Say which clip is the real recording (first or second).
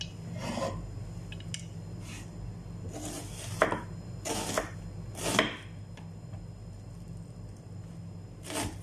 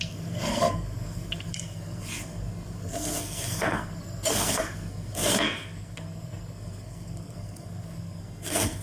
first